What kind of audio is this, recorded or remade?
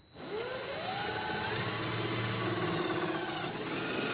recorded